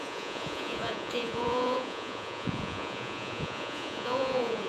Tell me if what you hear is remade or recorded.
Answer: remade